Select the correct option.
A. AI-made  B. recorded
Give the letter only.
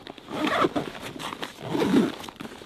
B